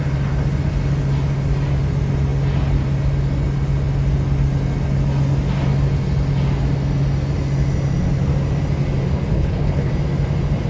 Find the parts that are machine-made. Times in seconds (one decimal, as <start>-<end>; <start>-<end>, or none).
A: 9.3-9.9